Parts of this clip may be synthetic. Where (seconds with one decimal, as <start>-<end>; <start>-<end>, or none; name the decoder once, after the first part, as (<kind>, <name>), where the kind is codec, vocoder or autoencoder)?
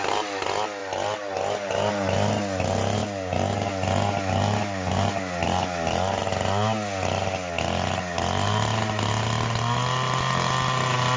none